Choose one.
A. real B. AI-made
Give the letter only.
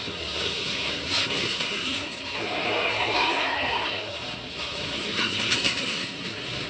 B